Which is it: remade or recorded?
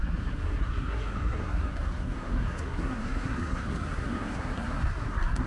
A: remade